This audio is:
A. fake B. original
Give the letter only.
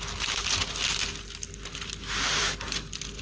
B